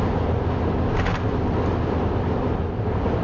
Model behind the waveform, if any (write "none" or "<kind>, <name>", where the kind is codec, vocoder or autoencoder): none